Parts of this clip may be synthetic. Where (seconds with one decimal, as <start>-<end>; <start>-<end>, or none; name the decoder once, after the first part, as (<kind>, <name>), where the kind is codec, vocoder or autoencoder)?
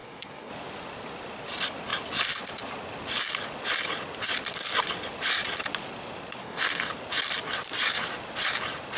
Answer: 0.0-0.5 (codec, SNAC); 6.4-6.9